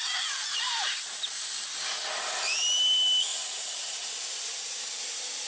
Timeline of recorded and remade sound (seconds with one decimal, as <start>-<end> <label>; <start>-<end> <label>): 0.0-3.3 recorded; 3.3-4.1 remade; 4.1-5.5 recorded